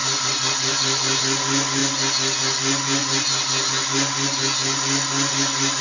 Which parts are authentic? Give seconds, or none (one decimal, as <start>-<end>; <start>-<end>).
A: 1.2-5.8